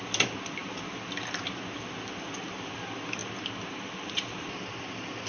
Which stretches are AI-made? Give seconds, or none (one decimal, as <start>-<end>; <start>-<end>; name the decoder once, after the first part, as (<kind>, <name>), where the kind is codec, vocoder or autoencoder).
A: none